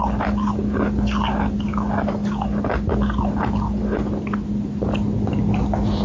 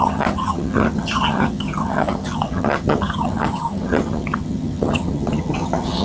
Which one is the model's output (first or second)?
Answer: second